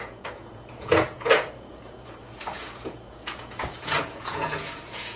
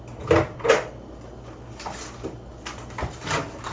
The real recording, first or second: second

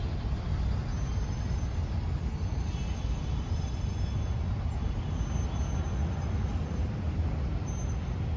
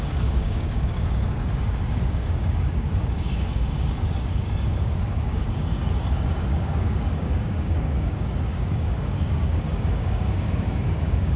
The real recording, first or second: first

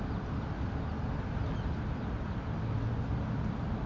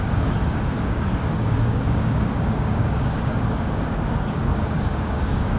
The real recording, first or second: first